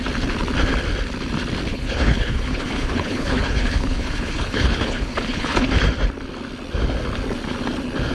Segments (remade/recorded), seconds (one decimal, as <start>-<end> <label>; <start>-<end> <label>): 0.0-1.7 recorded; 1.7-5.7 remade; 5.7-8.1 recorded